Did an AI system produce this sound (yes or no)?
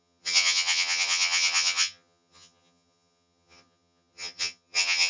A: yes